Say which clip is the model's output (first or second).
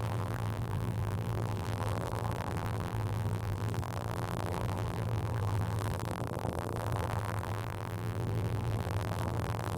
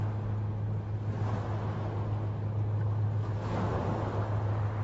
first